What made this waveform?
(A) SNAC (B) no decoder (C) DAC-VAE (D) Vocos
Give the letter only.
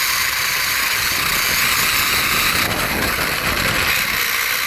B